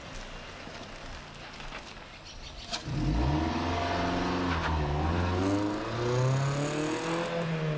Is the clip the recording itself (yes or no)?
yes